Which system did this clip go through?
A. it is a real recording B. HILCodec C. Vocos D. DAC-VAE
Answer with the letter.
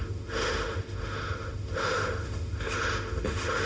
D